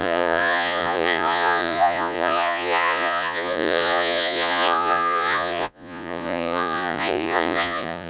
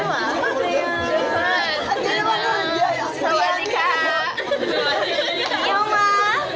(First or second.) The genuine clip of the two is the second